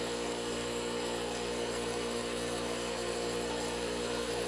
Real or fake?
fake